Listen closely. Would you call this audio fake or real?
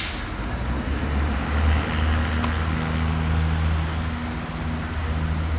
real